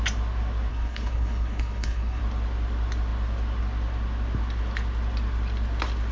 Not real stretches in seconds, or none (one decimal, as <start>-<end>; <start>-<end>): 0.7-2.2